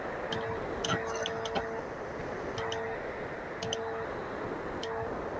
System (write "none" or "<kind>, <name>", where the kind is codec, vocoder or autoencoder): none